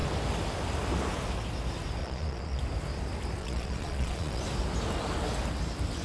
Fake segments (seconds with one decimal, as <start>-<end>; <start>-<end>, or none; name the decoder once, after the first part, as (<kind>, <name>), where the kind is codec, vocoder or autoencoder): 2.0-2.6 (vocoder, Vocos); 3.4-4.4